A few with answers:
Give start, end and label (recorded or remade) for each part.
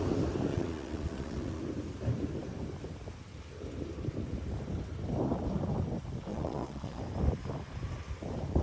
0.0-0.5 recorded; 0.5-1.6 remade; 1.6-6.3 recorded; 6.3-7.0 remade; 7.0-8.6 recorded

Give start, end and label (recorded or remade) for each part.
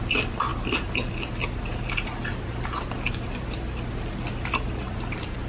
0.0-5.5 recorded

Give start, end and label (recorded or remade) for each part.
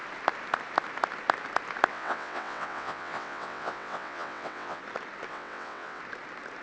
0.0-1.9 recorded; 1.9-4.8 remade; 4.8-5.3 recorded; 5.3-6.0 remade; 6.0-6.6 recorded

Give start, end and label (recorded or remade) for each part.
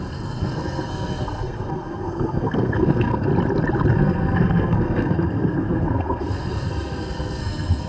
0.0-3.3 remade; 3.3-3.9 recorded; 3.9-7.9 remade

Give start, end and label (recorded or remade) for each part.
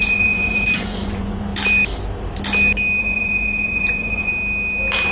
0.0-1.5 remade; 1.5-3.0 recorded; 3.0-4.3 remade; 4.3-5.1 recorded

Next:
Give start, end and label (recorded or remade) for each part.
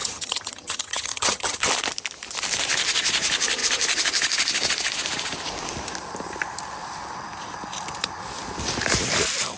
0.0-1.7 remade; 1.7-9.6 recorded